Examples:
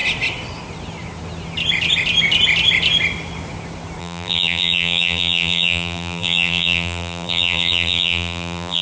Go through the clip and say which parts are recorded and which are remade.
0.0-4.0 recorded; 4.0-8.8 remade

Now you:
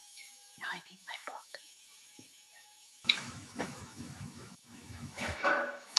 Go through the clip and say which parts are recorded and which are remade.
0.0-6.0 remade

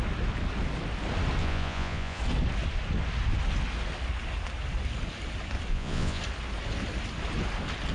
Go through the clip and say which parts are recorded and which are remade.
0.0-1.4 recorded; 1.4-2.2 remade; 2.2-5.7 recorded; 5.7-6.2 remade; 6.2-7.9 recorded

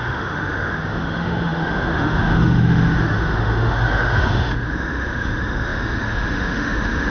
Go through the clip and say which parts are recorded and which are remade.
0.0-7.1 remade

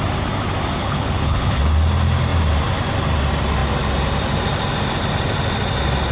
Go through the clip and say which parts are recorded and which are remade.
0.0-0.8 recorded; 0.8-1.6 remade; 1.6-6.1 recorded

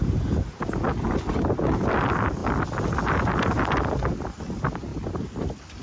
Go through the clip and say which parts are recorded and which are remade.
0.0-5.8 recorded

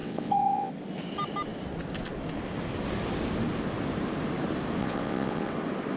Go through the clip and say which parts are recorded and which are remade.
0.0-0.7 remade; 0.7-4.8 recorded; 4.8-5.5 remade; 5.5-6.0 recorded

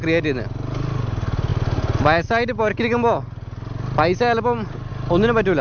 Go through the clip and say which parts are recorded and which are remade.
0.0-5.6 recorded